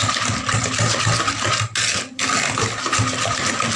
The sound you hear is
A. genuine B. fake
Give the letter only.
A